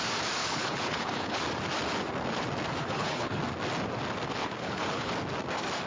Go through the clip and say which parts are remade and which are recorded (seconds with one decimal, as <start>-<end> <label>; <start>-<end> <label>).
0.0-0.4 recorded; 0.4-1.4 remade; 1.4-2.7 recorded; 2.7-3.4 remade; 3.4-4.4 recorded; 4.4-5.1 remade; 5.1-5.9 recorded